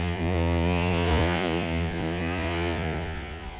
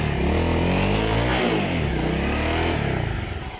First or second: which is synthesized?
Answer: first